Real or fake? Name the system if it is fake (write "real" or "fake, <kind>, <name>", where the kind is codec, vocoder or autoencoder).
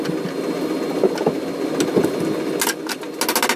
real